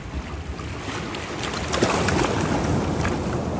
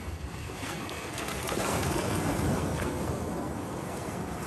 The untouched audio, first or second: first